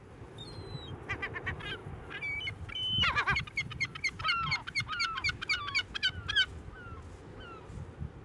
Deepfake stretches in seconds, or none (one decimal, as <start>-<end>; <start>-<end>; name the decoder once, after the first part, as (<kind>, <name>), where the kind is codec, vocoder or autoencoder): 1.8-2.6 (vocoder, BigVGAN v2); 3.7-4.3